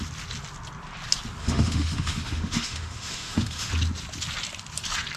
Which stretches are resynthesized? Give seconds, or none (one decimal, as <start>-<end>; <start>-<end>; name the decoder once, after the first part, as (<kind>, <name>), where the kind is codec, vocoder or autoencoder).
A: 1.4-3.7 (autoencoder, DAC-VAE)